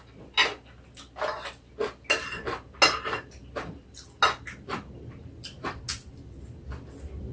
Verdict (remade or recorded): recorded